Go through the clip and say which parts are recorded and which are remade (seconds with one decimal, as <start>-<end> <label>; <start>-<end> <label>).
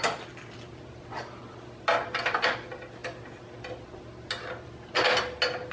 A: 0.0-5.7 recorded